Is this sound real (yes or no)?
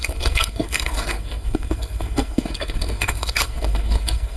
no